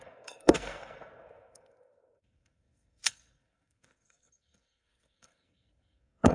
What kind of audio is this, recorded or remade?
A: remade